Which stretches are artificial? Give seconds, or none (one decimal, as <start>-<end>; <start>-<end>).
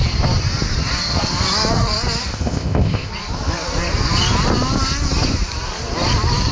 2.3-3.1